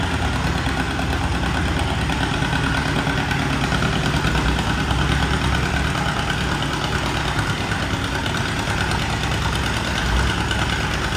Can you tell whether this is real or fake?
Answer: real